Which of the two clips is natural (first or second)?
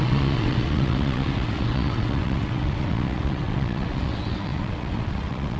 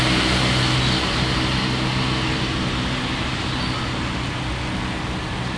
second